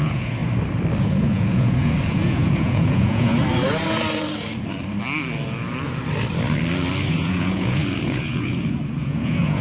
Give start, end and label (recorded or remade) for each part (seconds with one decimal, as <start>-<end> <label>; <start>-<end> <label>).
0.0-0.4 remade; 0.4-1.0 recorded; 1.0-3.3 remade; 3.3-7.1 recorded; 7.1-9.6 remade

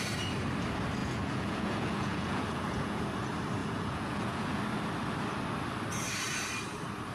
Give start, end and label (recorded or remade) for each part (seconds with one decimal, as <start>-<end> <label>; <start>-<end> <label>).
0.0-1.0 recorded; 1.0-3.0 remade; 3.0-3.6 recorded; 3.6-4.6 remade; 4.6-7.1 recorded

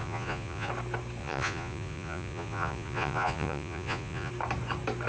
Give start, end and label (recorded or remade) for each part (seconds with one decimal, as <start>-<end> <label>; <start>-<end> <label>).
0.0-0.7 remade; 0.7-1.2 recorded; 1.2-4.3 remade; 4.3-5.1 recorded

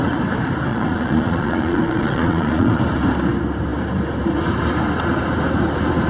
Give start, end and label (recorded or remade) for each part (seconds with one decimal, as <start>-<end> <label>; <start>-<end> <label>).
0.0-0.7 recorded; 0.7-2.8 remade; 2.8-6.1 recorded

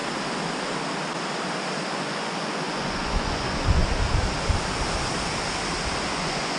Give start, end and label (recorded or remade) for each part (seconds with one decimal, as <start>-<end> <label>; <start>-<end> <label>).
0.0-1.9 recorded; 1.9-3.8 remade; 3.8-6.1 recorded; 6.1-6.6 remade